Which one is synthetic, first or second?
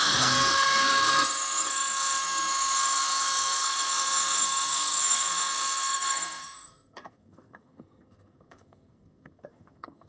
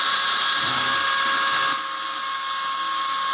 first